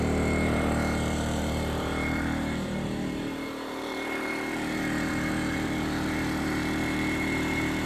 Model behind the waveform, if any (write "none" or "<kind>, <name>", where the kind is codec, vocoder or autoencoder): vocoder, BigVGAN v2